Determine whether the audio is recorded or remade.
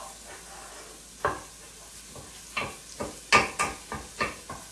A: recorded